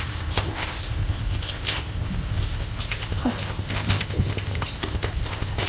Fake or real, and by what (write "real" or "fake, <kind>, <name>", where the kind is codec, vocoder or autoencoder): fake, codec, ZipCodec